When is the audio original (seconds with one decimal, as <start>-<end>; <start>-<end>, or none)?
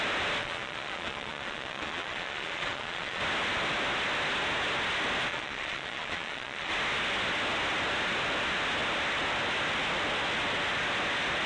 0.0-0.4; 3.2-5.3; 6.7-11.5